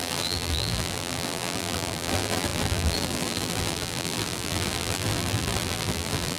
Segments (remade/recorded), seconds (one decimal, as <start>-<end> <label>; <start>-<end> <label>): 0.0-6.4 remade

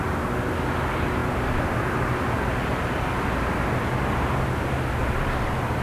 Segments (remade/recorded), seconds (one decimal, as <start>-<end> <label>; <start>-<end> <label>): 0.0-5.8 recorded

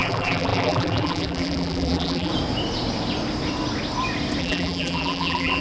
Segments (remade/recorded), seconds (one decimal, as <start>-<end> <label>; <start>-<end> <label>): 0.0-2.3 remade; 2.3-4.4 recorded; 4.4-5.6 remade

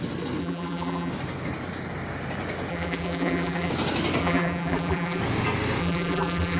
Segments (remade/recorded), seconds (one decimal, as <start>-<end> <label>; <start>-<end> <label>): 0.0-0.4 recorded; 0.4-1.1 remade; 1.1-2.7 recorded; 2.7-3.7 remade; 3.7-4.2 recorded; 4.2-5.2 remade; 5.2-5.8 recorded; 5.8-6.6 remade

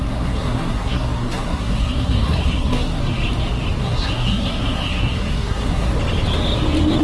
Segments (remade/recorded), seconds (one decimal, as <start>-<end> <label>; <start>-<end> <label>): 0.0-3.0 remade; 3.0-3.8 recorded; 3.8-5.9 remade; 5.9-7.0 recorded